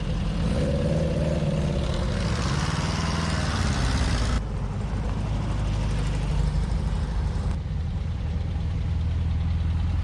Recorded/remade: recorded